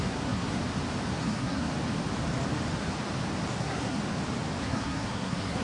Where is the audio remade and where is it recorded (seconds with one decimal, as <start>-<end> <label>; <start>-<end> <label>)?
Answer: 0.0-0.6 remade; 0.6-1.2 recorded; 1.2-1.7 remade; 1.7-3.6 recorded; 3.6-4.0 remade; 4.0-4.6 recorded; 4.6-5.6 remade